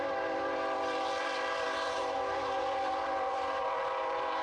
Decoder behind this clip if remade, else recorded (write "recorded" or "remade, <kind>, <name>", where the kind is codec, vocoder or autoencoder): remade, vocoder, BigVGAN v2